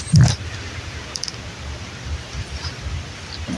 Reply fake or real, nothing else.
real